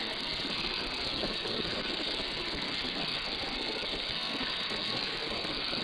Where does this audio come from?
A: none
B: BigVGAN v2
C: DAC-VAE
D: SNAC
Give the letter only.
D